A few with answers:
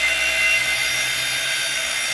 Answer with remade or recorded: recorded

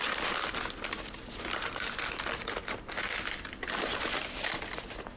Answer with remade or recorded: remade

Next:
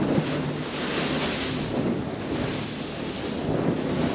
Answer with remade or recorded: recorded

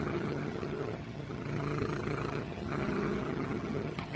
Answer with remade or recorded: remade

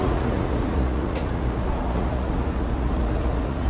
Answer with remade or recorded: remade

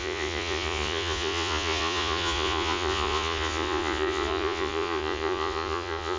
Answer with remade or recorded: remade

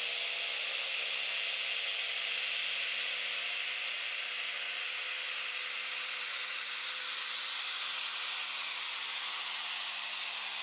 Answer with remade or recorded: recorded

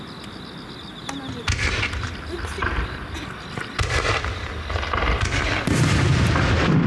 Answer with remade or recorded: recorded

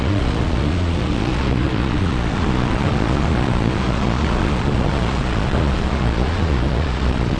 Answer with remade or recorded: remade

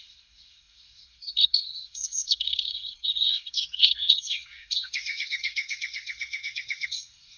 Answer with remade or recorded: remade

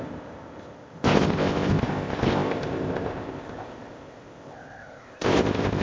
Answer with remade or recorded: remade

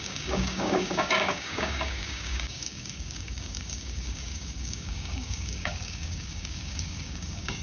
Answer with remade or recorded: remade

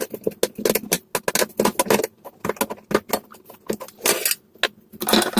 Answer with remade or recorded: recorded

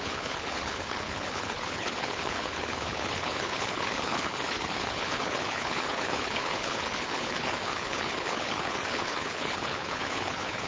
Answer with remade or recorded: remade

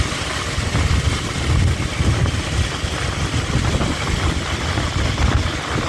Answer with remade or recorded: recorded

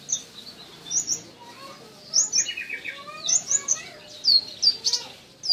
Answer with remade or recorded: recorded